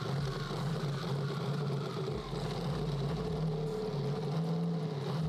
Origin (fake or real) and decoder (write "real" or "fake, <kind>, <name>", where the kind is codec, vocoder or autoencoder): real